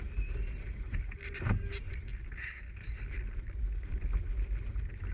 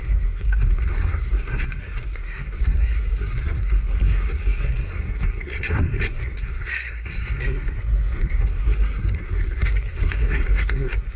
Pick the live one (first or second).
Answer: first